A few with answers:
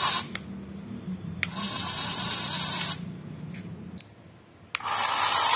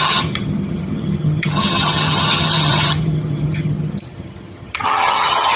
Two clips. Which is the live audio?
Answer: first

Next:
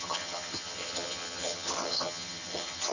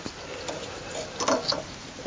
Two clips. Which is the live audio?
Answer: second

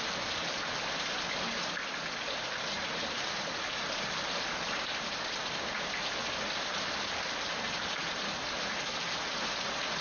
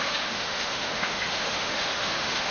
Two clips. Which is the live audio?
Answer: first